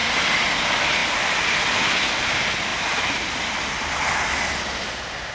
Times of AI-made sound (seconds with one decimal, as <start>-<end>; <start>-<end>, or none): none